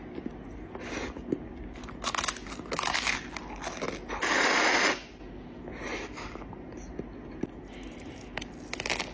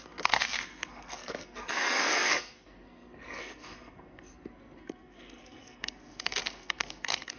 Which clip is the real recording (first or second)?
first